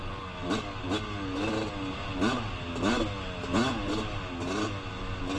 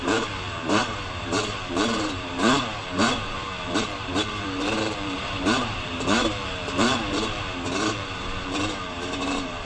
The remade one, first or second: second